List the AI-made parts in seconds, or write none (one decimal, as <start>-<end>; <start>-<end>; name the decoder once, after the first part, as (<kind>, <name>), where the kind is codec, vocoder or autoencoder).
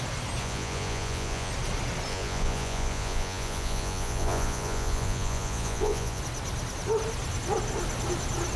0.4-1.5 (vocoder, Vocos); 2.1-6.2